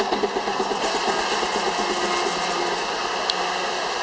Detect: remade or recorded recorded